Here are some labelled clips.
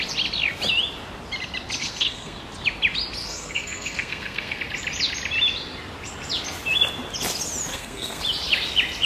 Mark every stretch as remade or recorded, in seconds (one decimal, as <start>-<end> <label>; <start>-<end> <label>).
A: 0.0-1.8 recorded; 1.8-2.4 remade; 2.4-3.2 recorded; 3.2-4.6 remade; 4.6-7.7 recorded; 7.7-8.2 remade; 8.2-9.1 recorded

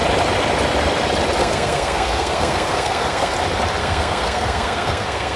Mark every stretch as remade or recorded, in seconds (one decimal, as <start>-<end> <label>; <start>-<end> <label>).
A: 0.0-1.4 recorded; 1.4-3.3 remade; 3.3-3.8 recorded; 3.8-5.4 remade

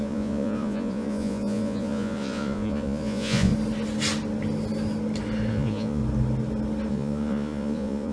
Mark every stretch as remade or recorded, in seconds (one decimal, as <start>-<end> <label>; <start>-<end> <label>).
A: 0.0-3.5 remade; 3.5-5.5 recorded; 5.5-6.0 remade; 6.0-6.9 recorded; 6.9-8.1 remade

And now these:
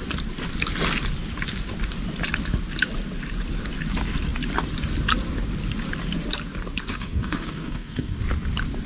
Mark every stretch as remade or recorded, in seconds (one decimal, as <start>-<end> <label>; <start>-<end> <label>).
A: 0.0-6.9 recorded; 6.9-8.2 remade; 8.2-8.9 recorded